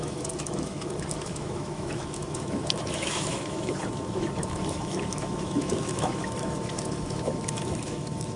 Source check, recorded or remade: remade